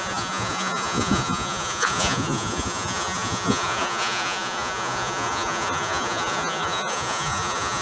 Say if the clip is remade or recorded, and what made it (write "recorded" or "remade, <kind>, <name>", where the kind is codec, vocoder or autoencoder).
remade, vocoder, Vocos